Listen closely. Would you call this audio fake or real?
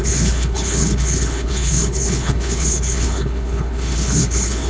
fake